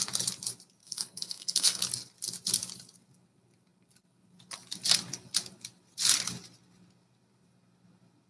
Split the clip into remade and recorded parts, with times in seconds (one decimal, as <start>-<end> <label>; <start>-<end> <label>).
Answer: 0.0-0.8 recorded; 0.8-1.8 remade; 1.8-8.3 recorded